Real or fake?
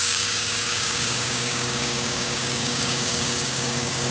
fake